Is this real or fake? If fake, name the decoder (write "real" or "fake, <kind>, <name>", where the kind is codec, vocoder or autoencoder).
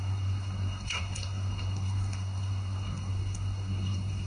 fake, codec, SNAC